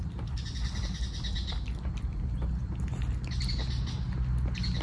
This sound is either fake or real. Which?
real